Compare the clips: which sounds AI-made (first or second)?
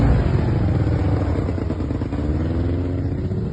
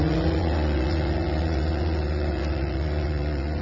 second